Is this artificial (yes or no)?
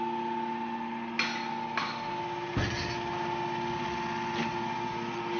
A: no